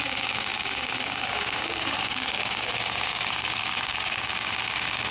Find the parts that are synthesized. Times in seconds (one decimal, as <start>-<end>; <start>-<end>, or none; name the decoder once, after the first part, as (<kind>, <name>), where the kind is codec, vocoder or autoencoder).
0.0-5.1 (codec, DAC)